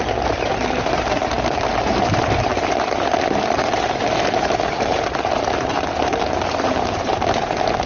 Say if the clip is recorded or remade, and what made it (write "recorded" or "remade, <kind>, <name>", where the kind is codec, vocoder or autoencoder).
remade, vocoder, BigVGAN v2